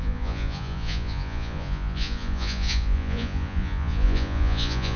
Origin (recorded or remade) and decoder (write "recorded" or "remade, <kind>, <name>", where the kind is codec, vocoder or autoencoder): remade, vocoder, Vocos